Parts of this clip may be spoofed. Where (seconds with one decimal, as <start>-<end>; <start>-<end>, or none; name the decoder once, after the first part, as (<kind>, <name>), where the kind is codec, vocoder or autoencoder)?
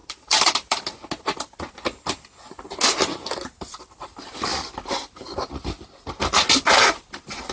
0.0-0.8 (vocoder, BigVGAN v2)